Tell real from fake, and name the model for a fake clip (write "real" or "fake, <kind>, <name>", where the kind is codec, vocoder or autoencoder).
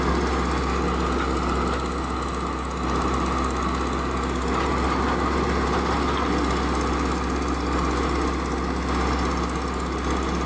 real